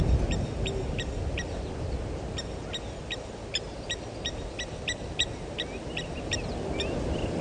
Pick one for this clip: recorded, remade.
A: recorded